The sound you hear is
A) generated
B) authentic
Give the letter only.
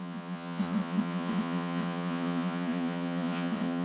A